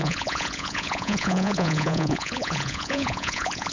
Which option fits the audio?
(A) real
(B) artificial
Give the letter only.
B